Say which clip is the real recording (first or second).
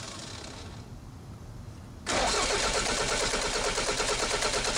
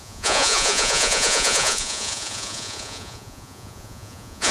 first